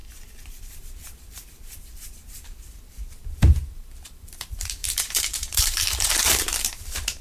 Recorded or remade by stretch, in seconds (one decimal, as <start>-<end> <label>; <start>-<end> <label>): 0.0-0.6 recorded; 0.6-7.2 remade